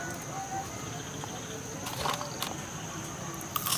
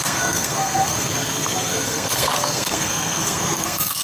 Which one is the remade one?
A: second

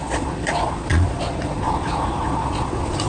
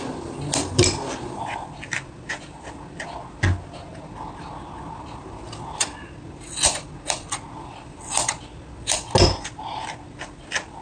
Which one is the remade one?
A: first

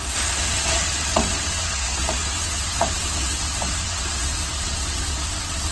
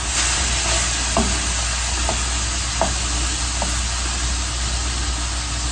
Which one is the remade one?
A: first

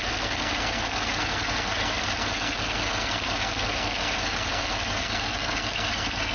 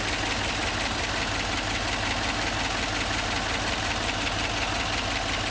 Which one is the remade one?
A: first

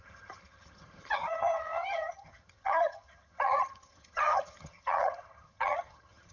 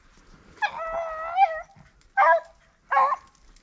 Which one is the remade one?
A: first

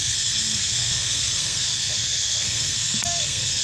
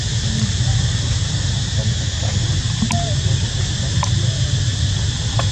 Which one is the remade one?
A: first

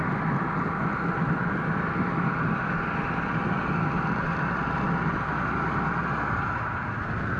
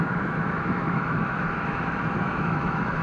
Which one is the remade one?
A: second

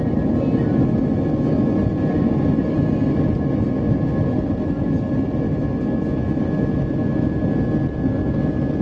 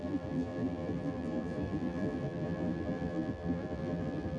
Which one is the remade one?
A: second